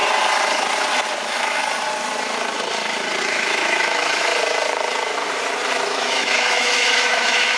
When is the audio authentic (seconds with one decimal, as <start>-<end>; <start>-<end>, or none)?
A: 0.0-1.2; 1.6-3.2; 4.3-5.7